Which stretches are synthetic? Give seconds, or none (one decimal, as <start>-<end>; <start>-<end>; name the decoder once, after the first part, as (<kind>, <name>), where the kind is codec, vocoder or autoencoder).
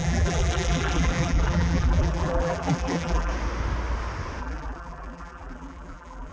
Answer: 0.0-3.3 (vocoder, BigVGAN v2); 4.4-6.3